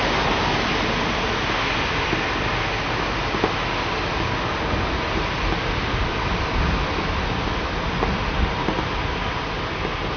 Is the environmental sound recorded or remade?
recorded